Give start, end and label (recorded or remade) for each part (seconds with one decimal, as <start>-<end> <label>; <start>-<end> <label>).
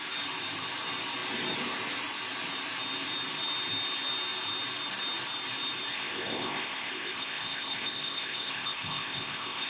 0.0-5.9 recorded; 5.9-9.7 remade